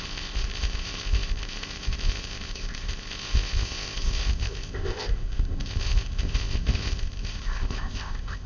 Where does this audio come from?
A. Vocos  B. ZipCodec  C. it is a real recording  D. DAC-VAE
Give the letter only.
B